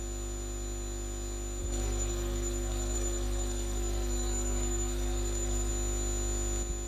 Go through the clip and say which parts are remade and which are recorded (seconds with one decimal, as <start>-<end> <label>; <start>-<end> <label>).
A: 0.0-1.6 recorded; 1.6-5.7 remade; 5.7-6.9 recorded